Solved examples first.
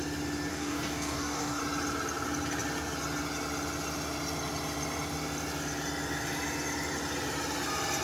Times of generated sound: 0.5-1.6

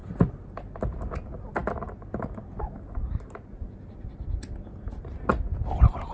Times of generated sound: none